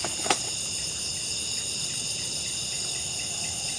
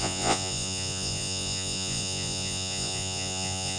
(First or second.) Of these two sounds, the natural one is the first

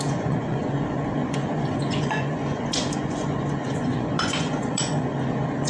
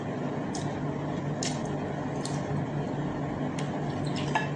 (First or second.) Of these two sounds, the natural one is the second